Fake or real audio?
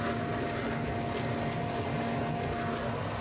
real